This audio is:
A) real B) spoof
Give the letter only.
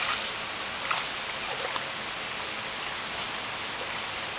A